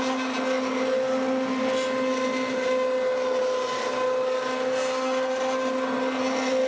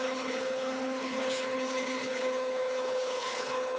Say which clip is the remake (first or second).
second